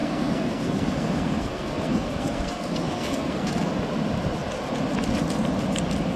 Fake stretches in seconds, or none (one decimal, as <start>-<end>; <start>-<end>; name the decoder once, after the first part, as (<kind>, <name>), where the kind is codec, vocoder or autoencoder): 0.0-3.7 (codec, SNAC)